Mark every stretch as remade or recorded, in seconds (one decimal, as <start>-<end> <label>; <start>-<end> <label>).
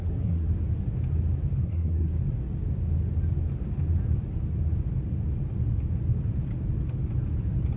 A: 0.0-0.5 remade; 0.5-1.6 recorded; 1.6-2.1 remade; 2.1-7.8 recorded